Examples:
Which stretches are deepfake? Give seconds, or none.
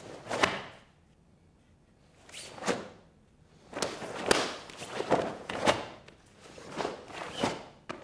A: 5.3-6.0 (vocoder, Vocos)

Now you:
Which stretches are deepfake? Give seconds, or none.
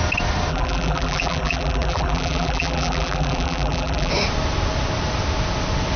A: 0.5-4.1 (vocoder, BigVGAN v2)